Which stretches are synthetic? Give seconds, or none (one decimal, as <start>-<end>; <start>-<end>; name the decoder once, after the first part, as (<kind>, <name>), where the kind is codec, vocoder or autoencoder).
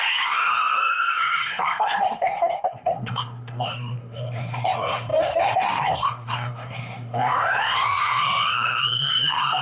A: 0.0-9.6 (codec, SNAC)